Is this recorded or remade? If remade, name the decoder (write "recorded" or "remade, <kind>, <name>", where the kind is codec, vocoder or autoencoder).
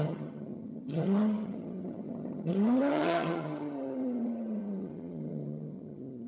remade, vocoder, HiFi-GAN